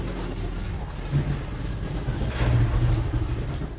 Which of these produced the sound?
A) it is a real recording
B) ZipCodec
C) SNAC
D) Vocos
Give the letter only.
A